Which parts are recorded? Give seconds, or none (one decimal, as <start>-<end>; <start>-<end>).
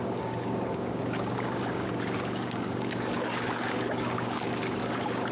none